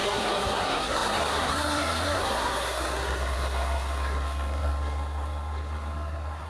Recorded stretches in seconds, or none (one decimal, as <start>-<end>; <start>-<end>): none